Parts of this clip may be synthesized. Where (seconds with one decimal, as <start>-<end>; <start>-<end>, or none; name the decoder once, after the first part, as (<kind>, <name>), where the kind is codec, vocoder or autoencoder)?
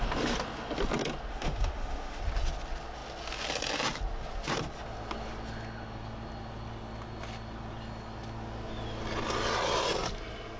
1.3-2.2 (autoencoder, DAC-VAE)